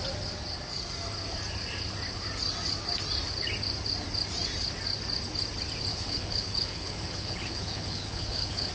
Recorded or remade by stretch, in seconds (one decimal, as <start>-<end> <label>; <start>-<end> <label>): 0.0-5.9 recorded; 5.9-8.7 remade